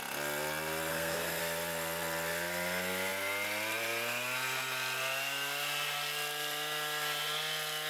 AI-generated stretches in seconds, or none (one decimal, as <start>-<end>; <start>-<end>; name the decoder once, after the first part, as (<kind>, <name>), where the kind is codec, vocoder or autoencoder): 0.9-1.4 (codec, SNAC)